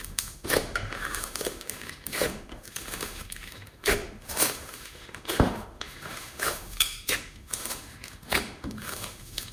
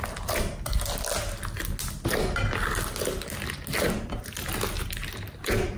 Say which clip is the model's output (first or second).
first